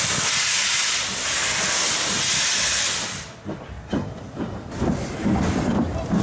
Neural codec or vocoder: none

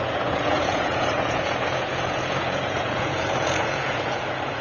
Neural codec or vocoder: vocoder, Vocos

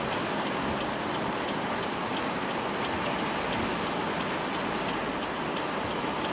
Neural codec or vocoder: none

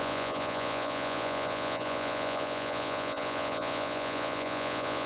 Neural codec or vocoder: vocoder, Vocos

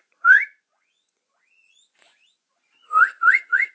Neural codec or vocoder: vocoder, Vocos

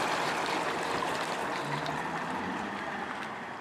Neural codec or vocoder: none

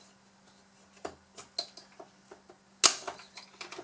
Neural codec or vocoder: none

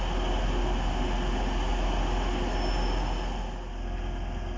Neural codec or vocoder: none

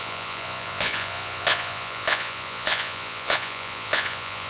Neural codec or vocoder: vocoder, Vocos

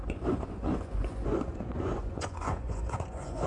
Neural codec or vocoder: vocoder, Vocos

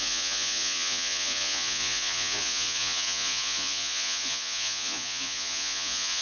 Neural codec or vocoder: vocoder, Vocos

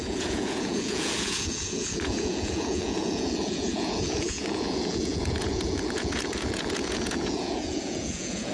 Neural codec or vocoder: vocoder, Vocos